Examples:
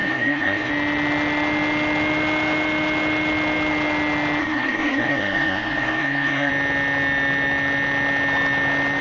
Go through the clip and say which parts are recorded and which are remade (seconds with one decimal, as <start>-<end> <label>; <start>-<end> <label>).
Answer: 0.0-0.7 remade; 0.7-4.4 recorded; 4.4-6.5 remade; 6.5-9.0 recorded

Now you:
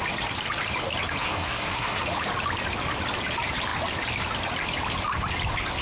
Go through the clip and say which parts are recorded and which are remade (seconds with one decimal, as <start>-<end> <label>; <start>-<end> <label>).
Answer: 0.0-1.2 recorded; 1.2-2.0 remade; 2.0-5.8 recorded

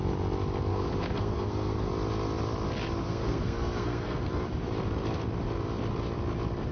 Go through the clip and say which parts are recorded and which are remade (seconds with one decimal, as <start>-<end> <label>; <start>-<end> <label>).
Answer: 0.0-0.7 recorded; 0.7-1.9 remade; 1.9-3.0 recorded; 3.0-4.3 remade; 4.3-6.7 recorded

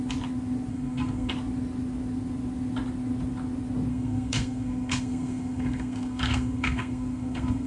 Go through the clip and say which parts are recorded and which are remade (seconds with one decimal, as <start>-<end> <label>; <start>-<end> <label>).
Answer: 0.0-0.7 recorded; 0.7-1.3 remade; 1.3-3.9 recorded; 3.9-7.7 remade